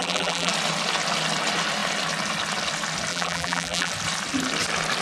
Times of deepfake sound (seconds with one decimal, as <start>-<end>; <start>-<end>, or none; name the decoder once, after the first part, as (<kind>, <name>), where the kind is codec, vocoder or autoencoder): 0.0-0.5 (vocoder, BigVGAN v2); 3.1-3.9

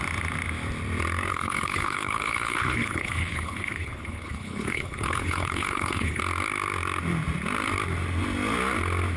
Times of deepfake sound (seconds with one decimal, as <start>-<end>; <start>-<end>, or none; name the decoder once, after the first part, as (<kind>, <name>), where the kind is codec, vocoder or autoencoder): 1.3-6.2 (codec, HILCodec)